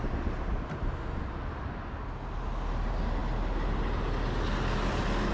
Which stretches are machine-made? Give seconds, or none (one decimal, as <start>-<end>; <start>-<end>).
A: none